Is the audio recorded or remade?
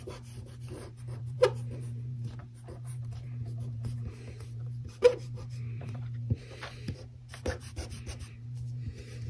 remade